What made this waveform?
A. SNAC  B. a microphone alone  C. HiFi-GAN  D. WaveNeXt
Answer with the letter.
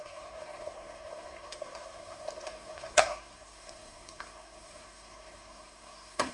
A